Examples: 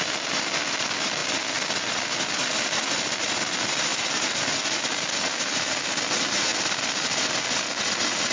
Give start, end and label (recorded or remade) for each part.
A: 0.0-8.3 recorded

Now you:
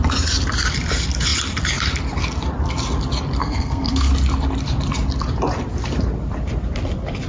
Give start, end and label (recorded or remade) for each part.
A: 0.0-3.4 recorded; 3.4-4.1 remade; 4.1-7.3 recorded